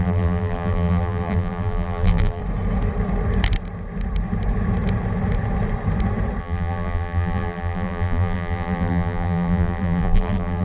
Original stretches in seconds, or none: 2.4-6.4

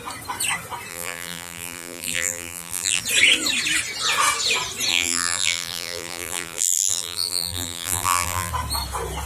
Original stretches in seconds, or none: 0.0-0.9; 3.0-4.9; 8.5-9.3

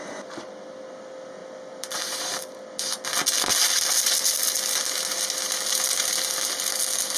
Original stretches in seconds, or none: 0.0-7.2

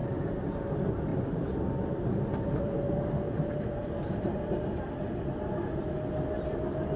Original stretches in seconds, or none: 0.6-1.1; 4.7-7.0